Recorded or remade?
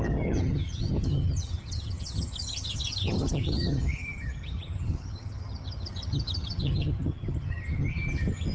remade